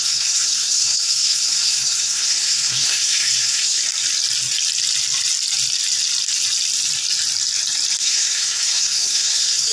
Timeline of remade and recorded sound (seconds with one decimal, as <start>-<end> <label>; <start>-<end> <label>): 0.0-3.8 remade; 3.8-8.0 recorded; 8.0-9.7 remade